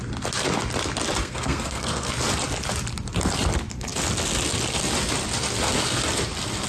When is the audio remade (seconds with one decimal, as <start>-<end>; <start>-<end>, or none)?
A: 1.2-2.1